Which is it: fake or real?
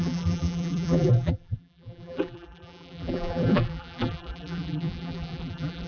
fake